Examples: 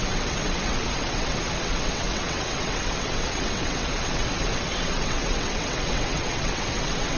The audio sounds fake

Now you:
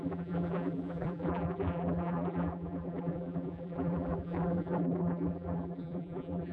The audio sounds fake